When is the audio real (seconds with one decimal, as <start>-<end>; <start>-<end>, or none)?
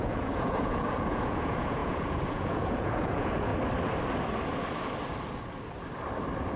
3.5-6.6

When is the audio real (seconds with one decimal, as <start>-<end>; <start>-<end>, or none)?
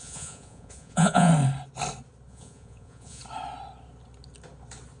1.3-2.3; 3.2-5.0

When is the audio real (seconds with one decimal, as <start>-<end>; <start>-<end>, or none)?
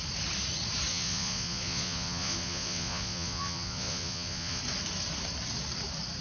0.0-0.9; 4.6-6.2